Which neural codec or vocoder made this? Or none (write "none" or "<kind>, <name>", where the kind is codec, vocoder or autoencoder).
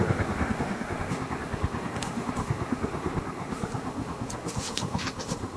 codec, SNAC